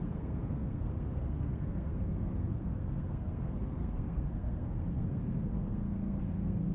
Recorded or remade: remade